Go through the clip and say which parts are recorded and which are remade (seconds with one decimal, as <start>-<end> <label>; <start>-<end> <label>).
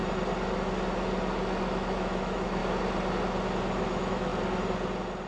0.0-1.6 recorded; 1.6-2.6 remade; 2.6-3.8 recorded; 3.8-4.3 remade; 4.3-5.3 recorded